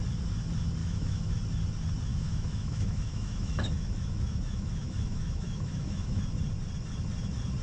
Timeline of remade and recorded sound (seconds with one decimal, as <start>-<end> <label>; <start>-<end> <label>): 0.0-0.8 recorded; 0.8-1.3 remade; 1.3-2.1 recorded; 2.1-6.2 remade; 6.2-7.6 recorded